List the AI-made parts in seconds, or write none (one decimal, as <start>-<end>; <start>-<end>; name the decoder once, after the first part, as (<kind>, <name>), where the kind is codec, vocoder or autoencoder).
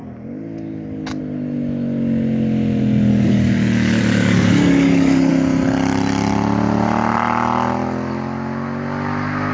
3.1-5.3 (codec, DAC)